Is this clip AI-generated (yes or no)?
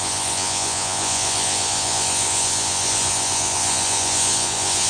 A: yes